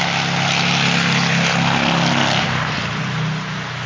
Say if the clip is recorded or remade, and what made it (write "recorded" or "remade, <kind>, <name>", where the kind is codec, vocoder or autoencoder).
recorded